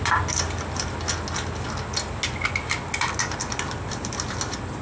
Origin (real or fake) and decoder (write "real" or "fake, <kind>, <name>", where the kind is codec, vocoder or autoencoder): real